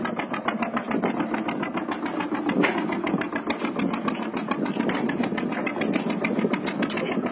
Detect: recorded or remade recorded